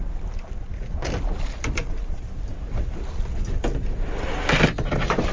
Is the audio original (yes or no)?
yes